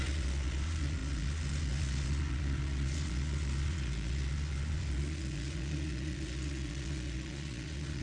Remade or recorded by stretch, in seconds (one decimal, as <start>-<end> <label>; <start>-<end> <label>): 0.0-8.0 remade